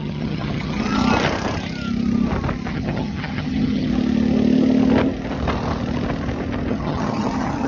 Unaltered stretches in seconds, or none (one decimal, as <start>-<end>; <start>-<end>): 1.0-2.7; 3.9-6.7